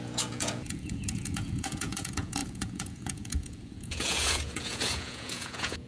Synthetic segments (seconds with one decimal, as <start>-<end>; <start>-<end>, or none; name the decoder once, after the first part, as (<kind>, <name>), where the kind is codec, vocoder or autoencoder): 0.0-5.9 (vocoder, Vocos)